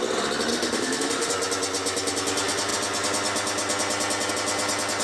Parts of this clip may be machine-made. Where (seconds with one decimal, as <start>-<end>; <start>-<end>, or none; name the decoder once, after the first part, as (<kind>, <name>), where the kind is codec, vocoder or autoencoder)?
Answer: 0.5-1.3 (autoencoder, DAC-VAE)